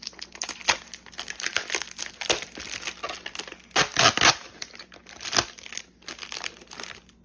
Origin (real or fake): real